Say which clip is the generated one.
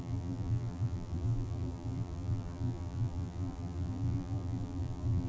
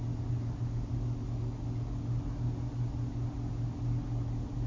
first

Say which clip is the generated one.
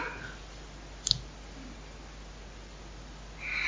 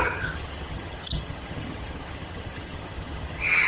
second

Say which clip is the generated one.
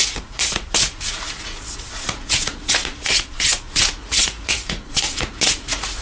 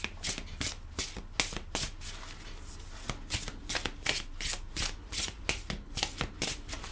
first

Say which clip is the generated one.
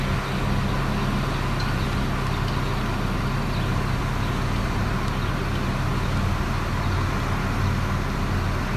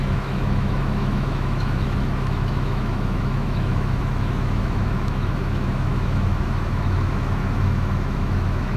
second